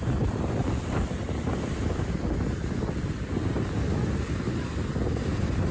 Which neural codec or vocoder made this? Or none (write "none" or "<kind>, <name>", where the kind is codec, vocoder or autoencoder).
none